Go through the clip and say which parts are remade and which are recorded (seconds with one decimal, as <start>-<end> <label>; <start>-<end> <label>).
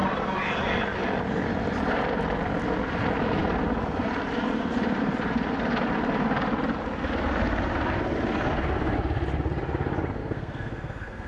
0.0-10.2 recorded; 10.2-11.3 remade